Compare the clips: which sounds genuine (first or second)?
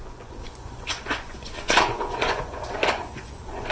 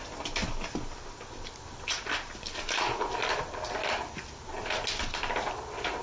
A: second